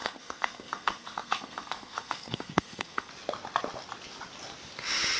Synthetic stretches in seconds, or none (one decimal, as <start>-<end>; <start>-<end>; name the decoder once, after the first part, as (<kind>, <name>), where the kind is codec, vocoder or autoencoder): 0.0-3.1 (codec, SNAC)